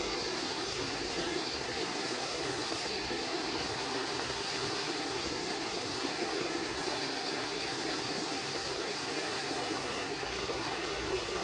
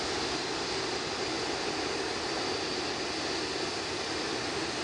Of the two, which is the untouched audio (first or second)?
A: second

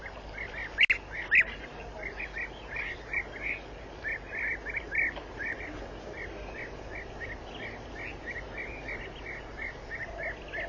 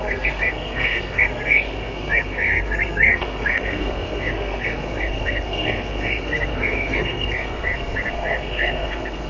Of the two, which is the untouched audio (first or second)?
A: first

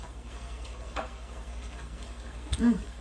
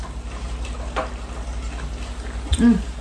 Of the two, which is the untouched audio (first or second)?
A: second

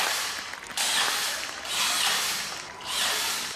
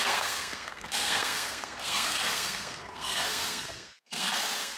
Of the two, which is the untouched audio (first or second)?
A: first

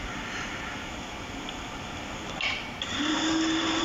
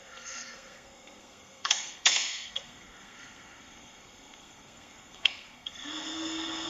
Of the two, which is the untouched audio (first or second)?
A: first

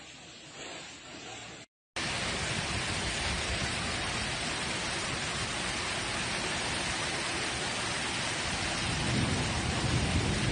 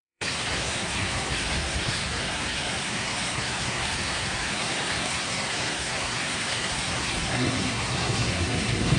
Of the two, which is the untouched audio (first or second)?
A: first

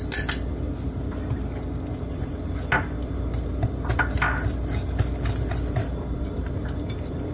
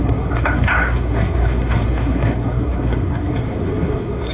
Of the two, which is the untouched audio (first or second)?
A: first